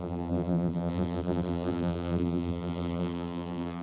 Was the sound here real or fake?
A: fake